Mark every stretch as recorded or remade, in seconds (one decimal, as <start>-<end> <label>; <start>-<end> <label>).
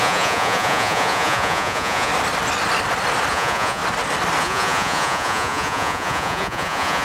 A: 0.0-2.1 remade; 2.1-3.3 recorded; 3.3-3.8 remade; 3.8-4.4 recorded; 4.4-7.0 remade